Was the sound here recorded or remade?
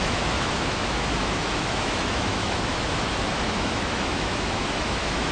remade